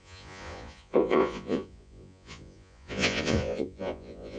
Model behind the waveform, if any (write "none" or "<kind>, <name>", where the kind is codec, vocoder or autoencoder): vocoder, Vocos